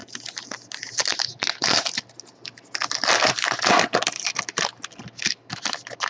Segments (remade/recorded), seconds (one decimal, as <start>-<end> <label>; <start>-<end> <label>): 0.0-6.1 recorded